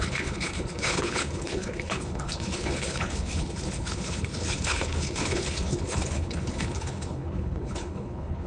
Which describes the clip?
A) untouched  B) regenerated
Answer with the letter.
B